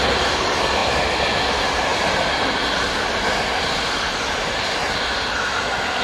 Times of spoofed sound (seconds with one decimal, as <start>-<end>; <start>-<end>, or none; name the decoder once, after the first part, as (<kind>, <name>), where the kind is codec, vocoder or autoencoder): none